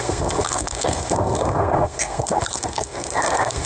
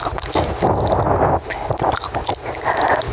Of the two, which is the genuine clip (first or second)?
second